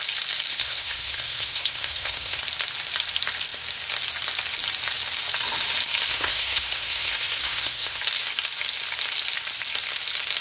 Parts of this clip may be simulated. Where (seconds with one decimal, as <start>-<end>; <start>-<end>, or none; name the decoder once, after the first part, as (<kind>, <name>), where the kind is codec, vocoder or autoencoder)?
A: 0.5-2.4 (codec, SNAC); 6.1-8.0